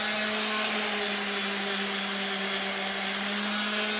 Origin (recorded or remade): recorded